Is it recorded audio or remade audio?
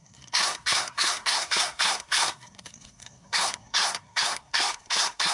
remade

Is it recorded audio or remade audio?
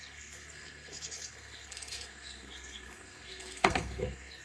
remade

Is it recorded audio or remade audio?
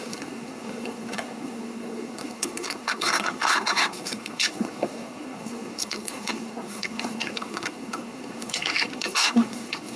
remade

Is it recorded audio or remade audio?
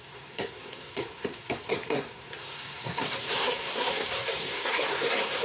remade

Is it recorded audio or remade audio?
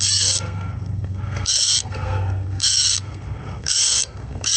remade